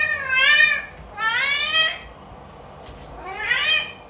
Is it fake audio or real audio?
real